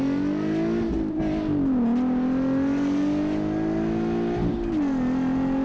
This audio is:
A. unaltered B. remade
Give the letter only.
A